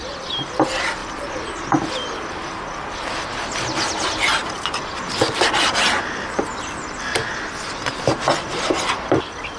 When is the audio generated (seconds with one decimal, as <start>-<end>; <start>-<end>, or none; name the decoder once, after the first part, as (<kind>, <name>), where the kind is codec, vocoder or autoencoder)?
none